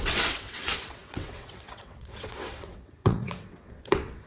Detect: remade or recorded remade